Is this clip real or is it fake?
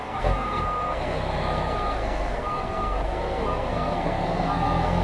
fake